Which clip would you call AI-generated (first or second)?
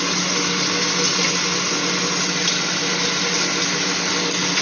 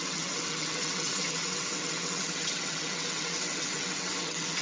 second